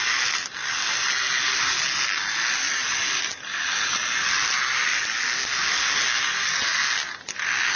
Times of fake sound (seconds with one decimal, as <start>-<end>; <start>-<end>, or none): none